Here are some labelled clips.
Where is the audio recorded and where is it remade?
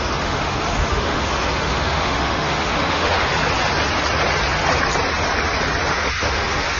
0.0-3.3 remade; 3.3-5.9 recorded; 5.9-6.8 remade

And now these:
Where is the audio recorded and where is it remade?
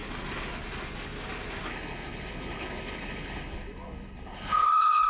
0.0-1.7 recorded; 1.7-5.1 remade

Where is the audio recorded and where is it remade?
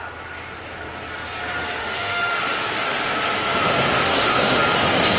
0.0-1.8 recorded; 1.8-2.4 remade; 2.4-3.9 recorded; 3.9-4.6 remade; 4.6-5.2 recorded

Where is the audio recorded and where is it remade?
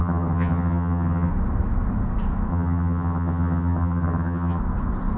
0.0-1.3 remade; 1.3-2.5 recorded; 2.5-4.6 remade; 4.6-5.2 recorded